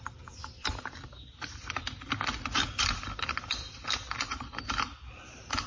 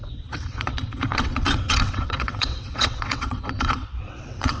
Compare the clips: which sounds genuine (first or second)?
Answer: first